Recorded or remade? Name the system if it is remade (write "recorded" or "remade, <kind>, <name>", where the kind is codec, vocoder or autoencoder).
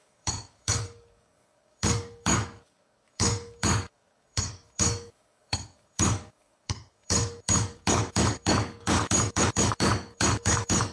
remade, codec, DAC